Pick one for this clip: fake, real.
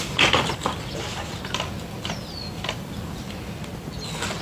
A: real